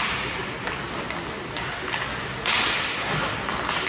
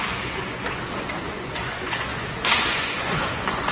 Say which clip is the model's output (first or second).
second